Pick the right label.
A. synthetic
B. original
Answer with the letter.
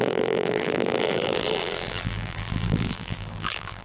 A